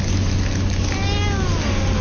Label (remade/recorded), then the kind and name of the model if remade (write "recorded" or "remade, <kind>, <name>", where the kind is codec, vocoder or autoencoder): recorded